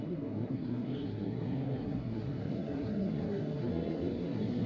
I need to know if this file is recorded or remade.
remade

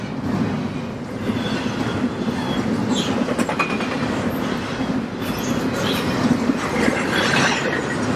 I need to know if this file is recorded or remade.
recorded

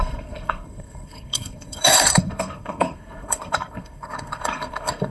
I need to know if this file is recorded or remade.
remade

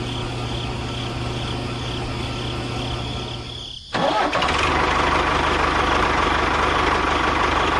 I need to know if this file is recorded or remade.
recorded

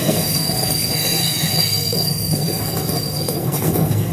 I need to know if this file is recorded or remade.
remade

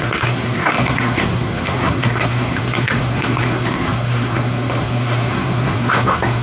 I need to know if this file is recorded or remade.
remade